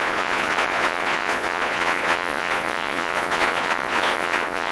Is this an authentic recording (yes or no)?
no